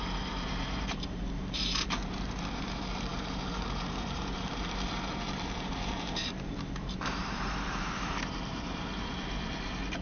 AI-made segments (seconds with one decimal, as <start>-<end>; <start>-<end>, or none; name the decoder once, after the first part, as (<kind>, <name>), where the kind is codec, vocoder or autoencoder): 0.0-10.0 (vocoder, BigVGAN v2)